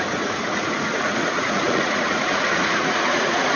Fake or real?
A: fake